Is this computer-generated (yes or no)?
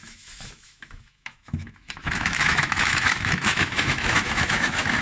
yes